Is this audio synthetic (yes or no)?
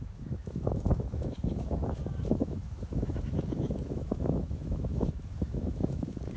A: yes